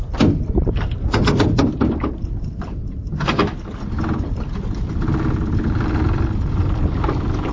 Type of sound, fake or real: real